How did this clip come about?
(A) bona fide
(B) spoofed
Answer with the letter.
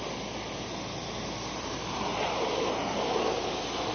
A